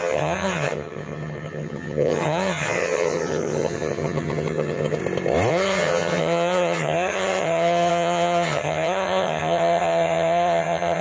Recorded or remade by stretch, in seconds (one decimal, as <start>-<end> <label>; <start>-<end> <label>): 0.0-5.0 remade; 5.0-5.5 recorded; 5.5-11.0 remade